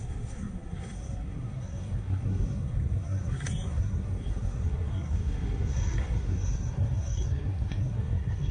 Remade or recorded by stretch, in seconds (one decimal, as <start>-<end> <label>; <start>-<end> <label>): 0.0-8.5 remade